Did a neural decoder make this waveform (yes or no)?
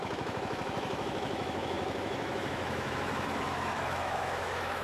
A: yes